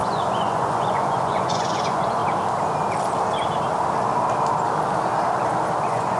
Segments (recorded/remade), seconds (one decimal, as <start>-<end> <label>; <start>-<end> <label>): 0.0-2.2 remade; 2.2-5.8 recorded; 5.8-6.2 remade